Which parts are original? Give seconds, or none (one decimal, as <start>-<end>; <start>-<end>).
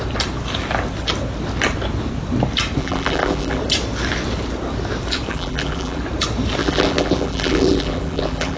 0.0-2.8; 3.6-5.3; 6.0-6.6